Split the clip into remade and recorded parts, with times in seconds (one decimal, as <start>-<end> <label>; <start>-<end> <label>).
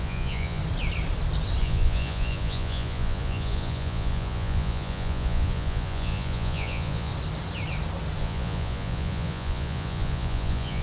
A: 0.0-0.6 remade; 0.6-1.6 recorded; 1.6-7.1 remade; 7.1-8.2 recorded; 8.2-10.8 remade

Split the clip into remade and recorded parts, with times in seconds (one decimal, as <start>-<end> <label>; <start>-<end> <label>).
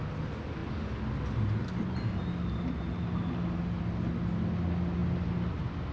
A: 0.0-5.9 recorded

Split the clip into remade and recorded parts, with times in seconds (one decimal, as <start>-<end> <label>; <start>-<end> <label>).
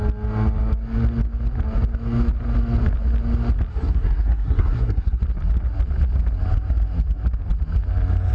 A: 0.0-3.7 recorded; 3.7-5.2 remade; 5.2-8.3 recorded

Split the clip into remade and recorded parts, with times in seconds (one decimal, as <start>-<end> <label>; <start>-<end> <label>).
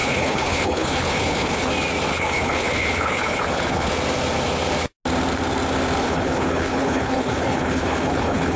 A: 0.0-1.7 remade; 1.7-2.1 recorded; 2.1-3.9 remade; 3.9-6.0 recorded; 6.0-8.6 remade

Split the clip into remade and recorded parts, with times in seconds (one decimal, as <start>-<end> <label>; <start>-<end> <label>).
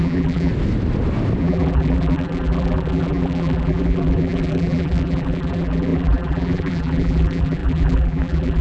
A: 0.0-0.5 remade; 0.5-1.4 recorded; 1.4-8.6 remade